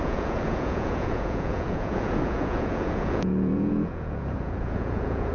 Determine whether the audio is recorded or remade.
remade